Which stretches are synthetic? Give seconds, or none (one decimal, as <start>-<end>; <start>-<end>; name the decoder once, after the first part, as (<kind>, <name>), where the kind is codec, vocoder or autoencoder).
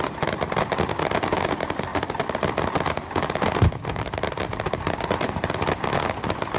0.0-6.6 (vocoder, BigVGAN v2)